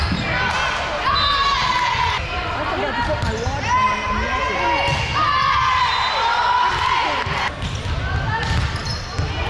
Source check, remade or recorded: recorded